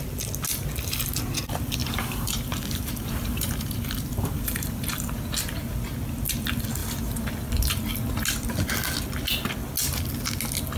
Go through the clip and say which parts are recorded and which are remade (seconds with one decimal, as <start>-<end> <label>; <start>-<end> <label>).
0.0-1.8 recorded; 1.8-5.2 remade; 5.2-6.8 recorded; 6.8-7.3 remade; 7.3-10.8 recorded